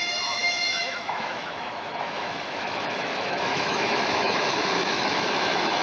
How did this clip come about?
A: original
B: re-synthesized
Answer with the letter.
B